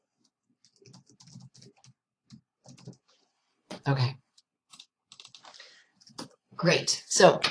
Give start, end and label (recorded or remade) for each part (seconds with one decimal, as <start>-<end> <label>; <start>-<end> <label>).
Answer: 0.0-3.4 recorded; 3.4-5.1 remade; 5.1-5.9 recorded; 5.9-7.5 remade